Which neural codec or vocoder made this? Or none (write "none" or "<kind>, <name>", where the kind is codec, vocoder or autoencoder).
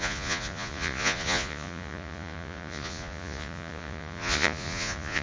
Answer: vocoder, Vocos